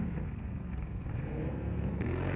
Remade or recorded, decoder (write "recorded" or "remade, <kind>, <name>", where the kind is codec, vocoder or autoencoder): remade, codec, SNAC